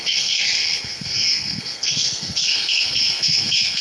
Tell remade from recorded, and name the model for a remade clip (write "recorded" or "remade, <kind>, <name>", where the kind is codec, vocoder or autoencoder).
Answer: remade, codec, SNAC